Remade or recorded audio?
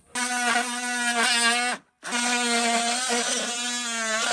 recorded